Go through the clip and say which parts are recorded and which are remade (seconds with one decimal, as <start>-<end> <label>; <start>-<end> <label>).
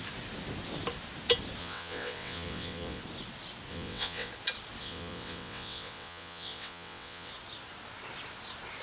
0.0-1.6 recorded; 1.6-3.0 remade; 3.0-3.7 recorded; 3.7-4.3 remade; 4.3-4.8 recorded; 4.8-7.3 remade; 7.3-8.8 recorded